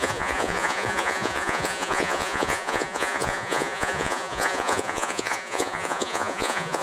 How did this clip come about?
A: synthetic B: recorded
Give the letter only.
A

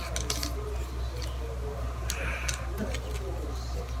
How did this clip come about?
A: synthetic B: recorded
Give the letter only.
B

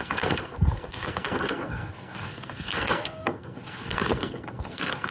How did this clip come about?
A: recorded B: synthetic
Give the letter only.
B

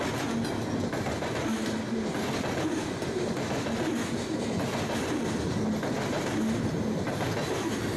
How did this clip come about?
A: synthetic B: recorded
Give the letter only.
B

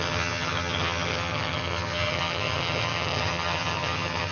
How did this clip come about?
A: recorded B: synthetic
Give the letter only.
B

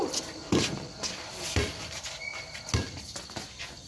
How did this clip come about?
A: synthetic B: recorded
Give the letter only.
B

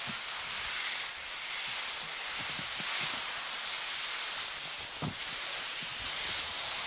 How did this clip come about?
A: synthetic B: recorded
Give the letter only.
B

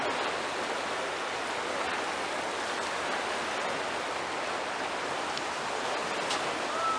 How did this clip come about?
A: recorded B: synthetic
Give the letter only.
A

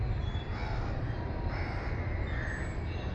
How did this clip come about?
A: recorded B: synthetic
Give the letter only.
A